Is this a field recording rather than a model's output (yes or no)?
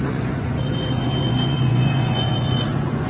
no